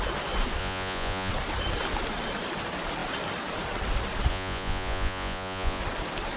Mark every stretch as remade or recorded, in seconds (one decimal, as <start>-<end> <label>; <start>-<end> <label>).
0.0-0.6 recorded; 0.6-1.3 remade; 1.3-4.3 recorded; 4.3-5.8 remade; 5.8-6.4 recorded